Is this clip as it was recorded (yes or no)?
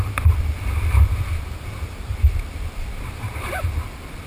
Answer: no